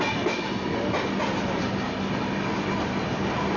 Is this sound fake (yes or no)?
no